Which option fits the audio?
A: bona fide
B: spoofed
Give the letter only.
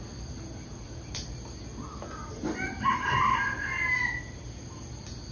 A